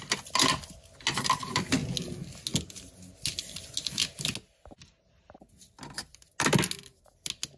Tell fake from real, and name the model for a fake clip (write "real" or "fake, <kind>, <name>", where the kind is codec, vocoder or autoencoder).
real